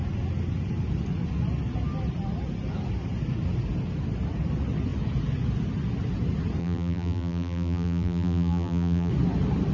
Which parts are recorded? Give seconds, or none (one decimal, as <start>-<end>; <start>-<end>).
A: 0.0-6.6; 9.1-9.7